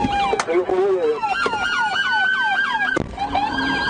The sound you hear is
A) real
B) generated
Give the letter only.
A